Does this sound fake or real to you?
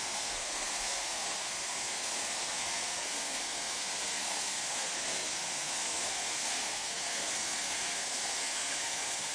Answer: fake